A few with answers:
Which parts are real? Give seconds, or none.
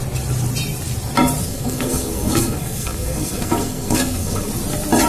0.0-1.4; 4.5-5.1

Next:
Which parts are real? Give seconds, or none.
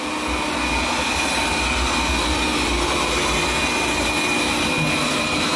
0.0-5.6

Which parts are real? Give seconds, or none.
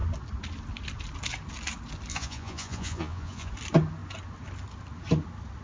0.0-2.1; 3.5-5.6